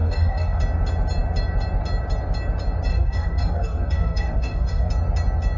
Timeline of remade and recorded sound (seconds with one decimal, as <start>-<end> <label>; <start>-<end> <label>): 0.0-0.6 remade; 0.6-2.9 recorded; 2.9-4.9 remade; 4.9-5.6 recorded